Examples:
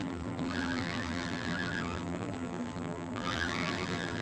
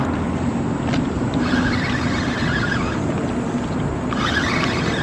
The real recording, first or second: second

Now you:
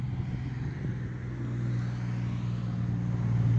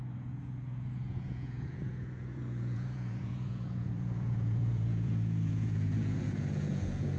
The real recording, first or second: first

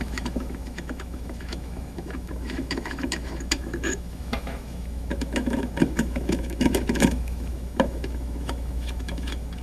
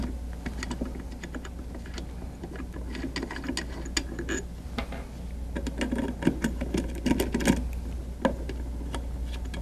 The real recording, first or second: second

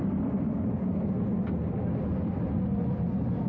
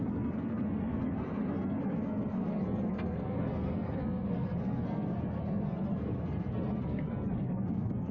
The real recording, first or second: first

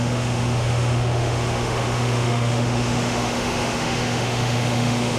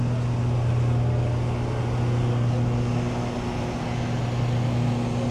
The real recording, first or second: second